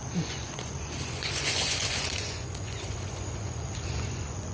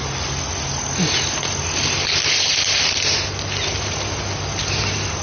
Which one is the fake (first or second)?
first